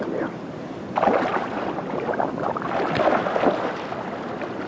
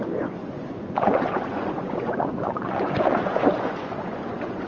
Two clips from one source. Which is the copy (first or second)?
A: second